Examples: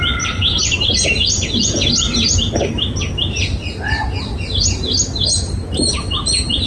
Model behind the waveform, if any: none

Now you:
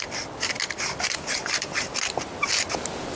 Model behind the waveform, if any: none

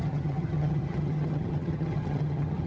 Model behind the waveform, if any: vocoder, HiFi-GAN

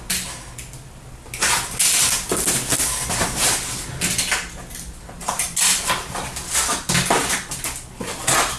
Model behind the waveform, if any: none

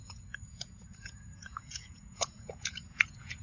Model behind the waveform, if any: vocoder, Vocos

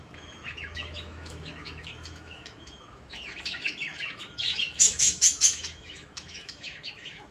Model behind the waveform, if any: autoencoder, DAC-VAE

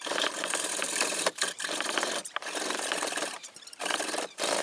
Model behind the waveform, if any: vocoder, BigVGAN v2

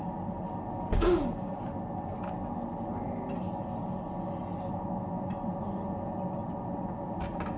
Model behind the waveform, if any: none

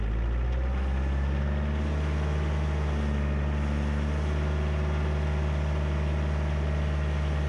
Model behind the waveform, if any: none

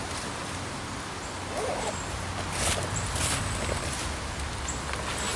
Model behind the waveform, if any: none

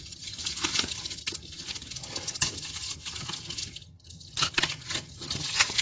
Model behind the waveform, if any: vocoder, HiFi-GAN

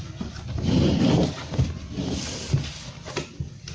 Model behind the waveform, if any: none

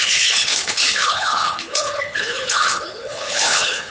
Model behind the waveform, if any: codec, HILCodec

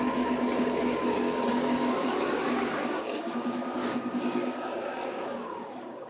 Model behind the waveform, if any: codec, DAC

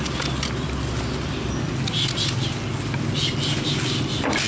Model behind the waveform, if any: none